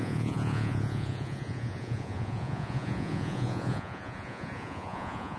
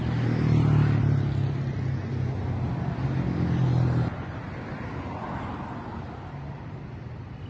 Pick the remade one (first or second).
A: first